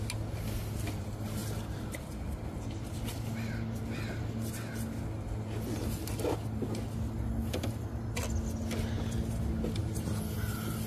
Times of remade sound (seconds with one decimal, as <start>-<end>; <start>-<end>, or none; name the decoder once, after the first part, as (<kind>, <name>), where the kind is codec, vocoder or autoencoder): none